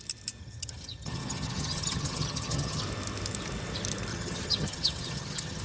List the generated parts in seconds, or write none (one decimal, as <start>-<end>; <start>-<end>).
0.4-2.8; 4.1-5.6